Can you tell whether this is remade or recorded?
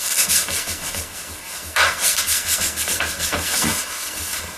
remade